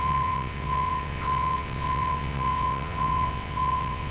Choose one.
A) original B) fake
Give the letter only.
B